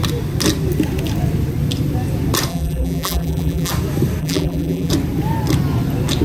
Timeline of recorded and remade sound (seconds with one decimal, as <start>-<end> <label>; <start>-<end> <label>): 0.0-2.5 recorded; 2.5-3.7 remade; 3.7-4.2 recorded; 4.2-4.9 remade; 4.9-6.2 recorded